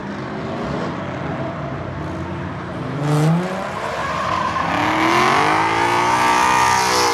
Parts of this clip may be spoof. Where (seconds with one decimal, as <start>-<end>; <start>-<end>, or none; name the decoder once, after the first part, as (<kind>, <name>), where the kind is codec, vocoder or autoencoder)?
4.0-4.7 (vocoder, BigVGAN v2)

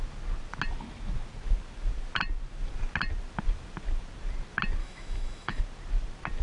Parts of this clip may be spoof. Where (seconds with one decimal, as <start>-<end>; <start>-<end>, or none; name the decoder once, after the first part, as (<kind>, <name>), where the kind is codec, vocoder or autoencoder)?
4.8-5.6 (autoencoder, DAC-VAE)

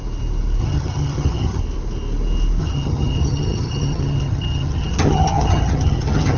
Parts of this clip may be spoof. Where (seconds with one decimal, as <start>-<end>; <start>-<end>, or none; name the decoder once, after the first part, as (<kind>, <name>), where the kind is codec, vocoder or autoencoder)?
0.6-1.6 (vocoder, HiFi-GAN); 2.6-6.4

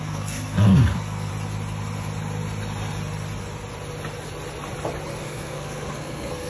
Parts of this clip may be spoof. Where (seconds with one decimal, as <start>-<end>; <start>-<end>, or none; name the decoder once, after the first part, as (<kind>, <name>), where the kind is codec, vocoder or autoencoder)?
0.0-1.3 (codec, SNAC); 5.2-6.5